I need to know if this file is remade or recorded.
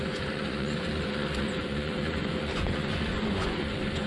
remade